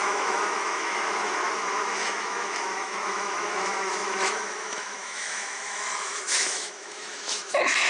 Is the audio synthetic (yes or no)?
yes